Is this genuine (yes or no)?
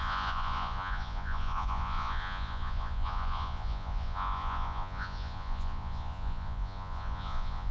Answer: no